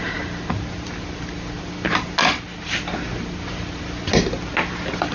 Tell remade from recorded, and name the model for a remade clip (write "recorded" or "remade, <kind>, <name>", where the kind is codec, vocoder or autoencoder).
recorded